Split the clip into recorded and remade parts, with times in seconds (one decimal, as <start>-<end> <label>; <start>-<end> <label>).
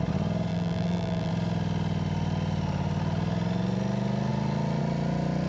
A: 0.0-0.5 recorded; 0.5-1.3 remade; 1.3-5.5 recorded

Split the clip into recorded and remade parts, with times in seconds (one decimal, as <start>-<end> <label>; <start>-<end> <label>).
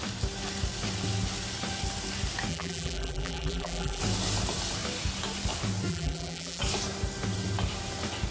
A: 0.0-2.5 recorded; 2.5-4.0 remade; 4.0-5.9 recorded; 5.9-6.6 remade; 6.6-8.3 recorded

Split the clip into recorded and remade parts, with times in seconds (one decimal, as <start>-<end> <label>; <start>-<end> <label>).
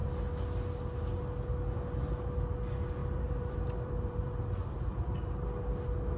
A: 0.0-3.0 recorded; 3.0-5.2 remade; 5.2-6.2 recorded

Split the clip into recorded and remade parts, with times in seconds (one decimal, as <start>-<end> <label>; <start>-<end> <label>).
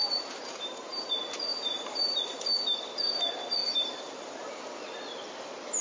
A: 0.0-1.1 remade; 1.1-1.5 recorded; 1.5-2.2 remade; 2.2-3.6 recorded; 3.6-4.6 remade; 4.6-5.8 recorded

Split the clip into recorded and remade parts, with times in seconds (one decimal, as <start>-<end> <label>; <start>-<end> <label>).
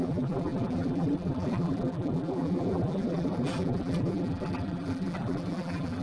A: 0.0-6.0 remade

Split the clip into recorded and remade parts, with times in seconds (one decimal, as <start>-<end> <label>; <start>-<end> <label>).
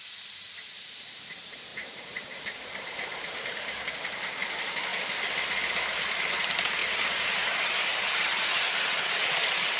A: 0.0-1.7 recorded; 1.7-3.9 remade; 3.9-6.8 recorded; 6.8-9.2 remade; 9.2-9.8 recorded